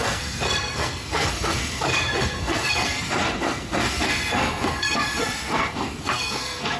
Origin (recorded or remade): remade